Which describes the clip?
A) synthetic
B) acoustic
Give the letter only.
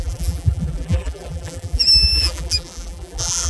A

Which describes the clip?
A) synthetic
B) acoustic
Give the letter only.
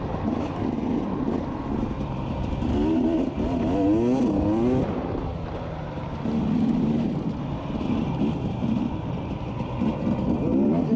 B